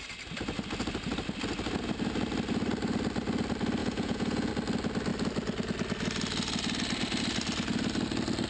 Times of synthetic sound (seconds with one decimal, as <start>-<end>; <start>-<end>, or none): 3.8-4.5

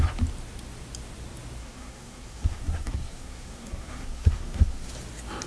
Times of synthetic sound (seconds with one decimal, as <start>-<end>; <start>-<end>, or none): 1.6-4.9

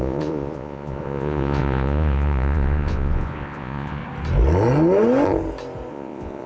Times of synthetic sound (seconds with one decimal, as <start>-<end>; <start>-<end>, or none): 0.0-4.0; 5.9-6.5

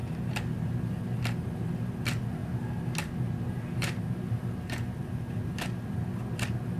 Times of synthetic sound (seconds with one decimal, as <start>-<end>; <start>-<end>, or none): none

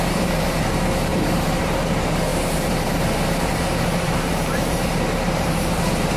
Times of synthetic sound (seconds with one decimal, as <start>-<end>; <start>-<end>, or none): 0.0-6.2

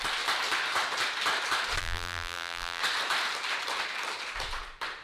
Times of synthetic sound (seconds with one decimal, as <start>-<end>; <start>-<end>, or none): 1.8-2.8

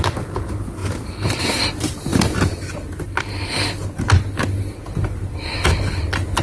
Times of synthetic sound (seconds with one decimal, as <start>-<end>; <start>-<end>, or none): 0.8-1.5; 2.1-2.6

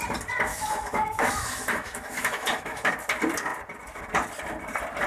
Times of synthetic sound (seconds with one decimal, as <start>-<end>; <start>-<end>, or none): 0.5-2.9